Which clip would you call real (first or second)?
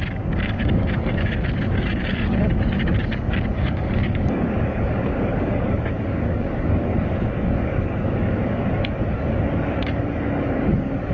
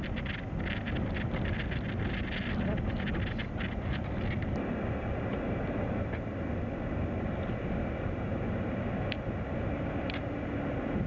second